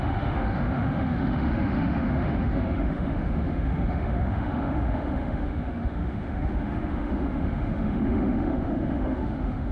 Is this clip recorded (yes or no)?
no